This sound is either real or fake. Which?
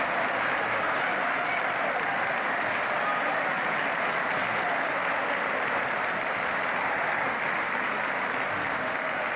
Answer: real